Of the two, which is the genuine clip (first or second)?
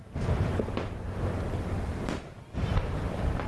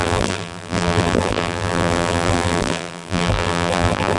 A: first